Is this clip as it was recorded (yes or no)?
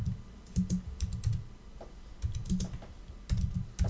yes